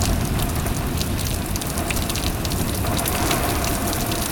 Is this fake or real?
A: fake